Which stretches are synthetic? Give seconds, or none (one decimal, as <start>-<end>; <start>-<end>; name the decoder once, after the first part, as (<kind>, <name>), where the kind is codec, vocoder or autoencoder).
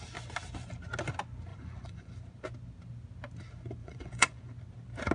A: 1.5-2.1 (vocoder, Vocos); 3.8-4.5